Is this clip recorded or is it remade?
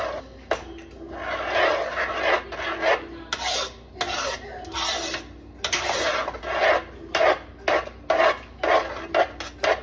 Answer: recorded